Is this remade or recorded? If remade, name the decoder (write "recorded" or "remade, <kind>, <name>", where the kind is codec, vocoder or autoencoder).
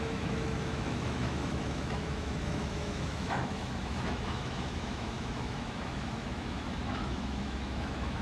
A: remade, autoencoder, DAC-VAE